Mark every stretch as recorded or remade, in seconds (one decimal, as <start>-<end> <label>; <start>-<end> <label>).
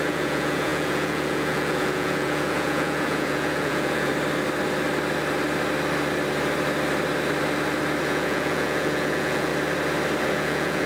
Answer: 0.0-4.1 remade; 4.1-8.0 recorded; 8.0-9.5 remade; 9.5-10.2 recorded; 10.2-10.9 remade